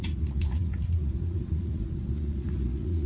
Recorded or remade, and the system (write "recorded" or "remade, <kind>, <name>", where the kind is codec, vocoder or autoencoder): remade, vocoder, Vocos